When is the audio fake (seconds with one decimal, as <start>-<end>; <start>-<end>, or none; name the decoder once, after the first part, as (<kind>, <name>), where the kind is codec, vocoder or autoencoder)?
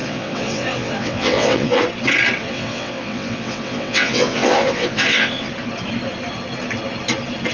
0.0-1.8 (vocoder, WaveNeXt); 2.4-5.5